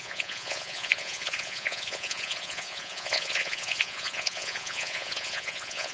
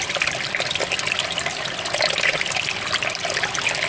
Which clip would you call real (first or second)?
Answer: second